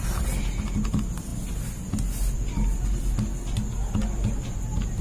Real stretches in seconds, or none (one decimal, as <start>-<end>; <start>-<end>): 0.0-5.0